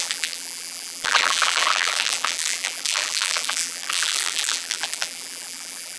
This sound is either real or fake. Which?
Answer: fake